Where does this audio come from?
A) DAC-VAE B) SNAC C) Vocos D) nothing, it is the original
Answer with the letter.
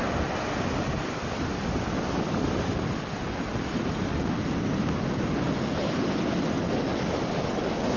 D